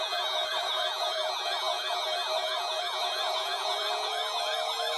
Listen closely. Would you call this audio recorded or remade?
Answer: remade